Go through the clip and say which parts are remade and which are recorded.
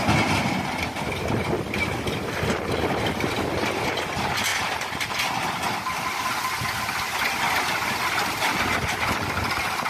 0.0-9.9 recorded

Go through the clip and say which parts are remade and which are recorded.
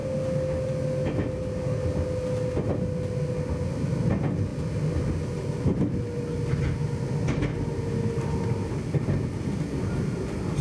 0.0-10.6 recorded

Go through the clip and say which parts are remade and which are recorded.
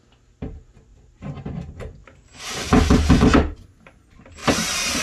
0.0-0.9 recorded; 0.9-1.5 remade; 1.5-5.0 recorded